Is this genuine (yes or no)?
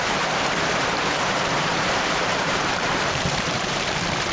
no